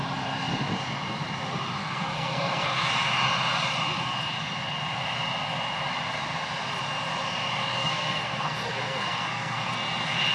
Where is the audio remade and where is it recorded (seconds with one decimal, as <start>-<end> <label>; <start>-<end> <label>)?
0.0-1.8 recorded; 1.8-2.9 remade; 2.9-7.8 recorded; 7.8-9.7 remade; 9.7-10.3 recorded